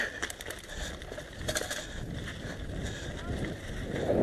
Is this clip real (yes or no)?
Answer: yes